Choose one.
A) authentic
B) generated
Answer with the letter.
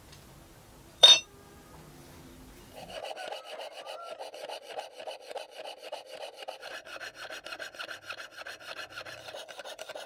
B